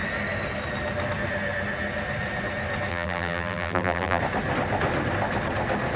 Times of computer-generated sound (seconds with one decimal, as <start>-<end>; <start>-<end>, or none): 2.9-4.2